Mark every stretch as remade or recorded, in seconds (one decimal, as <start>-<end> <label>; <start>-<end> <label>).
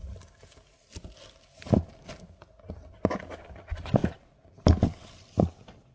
0.0-4.0 recorded; 4.0-4.6 remade; 4.6-5.9 recorded